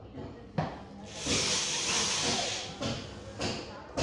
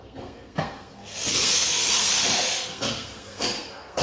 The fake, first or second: second